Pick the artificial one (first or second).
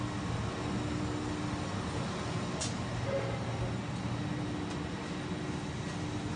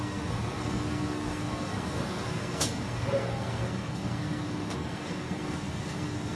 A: second